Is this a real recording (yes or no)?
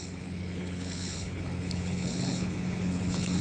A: no